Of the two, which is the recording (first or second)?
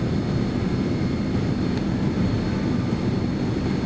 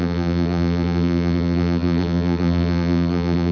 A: first